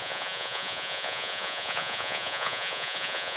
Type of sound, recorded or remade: remade